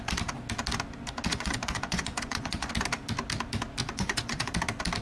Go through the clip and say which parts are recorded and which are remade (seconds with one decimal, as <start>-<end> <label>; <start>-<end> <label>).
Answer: 0.0-1.3 recorded; 1.3-2.7 remade; 2.7-3.8 recorded; 3.8-4.5 remade; 4.5-5.0 recorded